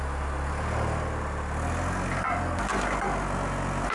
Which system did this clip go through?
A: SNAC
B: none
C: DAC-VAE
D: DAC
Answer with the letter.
B